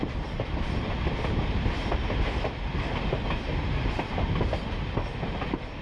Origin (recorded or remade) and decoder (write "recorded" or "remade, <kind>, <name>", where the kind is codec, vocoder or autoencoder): recorded